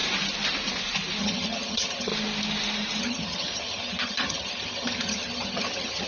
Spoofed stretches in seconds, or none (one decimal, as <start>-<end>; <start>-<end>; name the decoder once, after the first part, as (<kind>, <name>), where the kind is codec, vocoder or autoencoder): 1.2-2.1 (vocoder, HiFi-GAN); 3.0-6.1